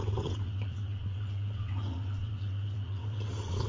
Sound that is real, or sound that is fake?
fake